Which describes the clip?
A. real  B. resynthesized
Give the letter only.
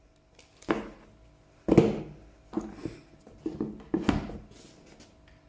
A